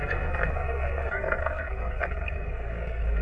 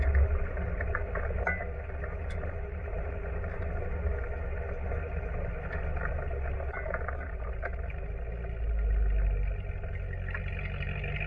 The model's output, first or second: first